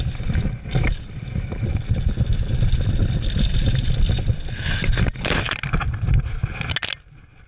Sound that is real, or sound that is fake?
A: real